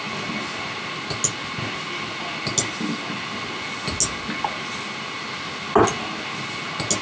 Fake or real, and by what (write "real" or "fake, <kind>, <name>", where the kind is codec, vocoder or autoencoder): real